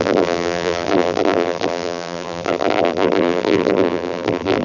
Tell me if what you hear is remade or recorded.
remade